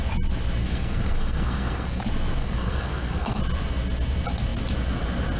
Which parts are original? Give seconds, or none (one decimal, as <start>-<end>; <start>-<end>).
0.0-0.6; 2.0-2.4; 3.4-5.4